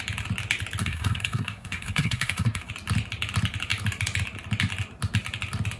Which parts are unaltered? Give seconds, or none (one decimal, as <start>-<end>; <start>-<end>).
0.0-0.8; 2.7-5.8